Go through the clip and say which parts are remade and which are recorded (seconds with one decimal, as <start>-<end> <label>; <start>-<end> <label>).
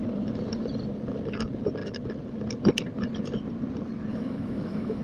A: 0.0-4.1 recorded; 4.1-5.0 remade